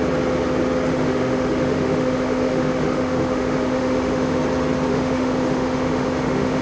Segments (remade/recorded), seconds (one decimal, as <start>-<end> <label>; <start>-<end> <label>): 0.0-0.9 recorded; 0.9-4.4 remade; 4.4-4.9 recorded; 4.9-6.6 remade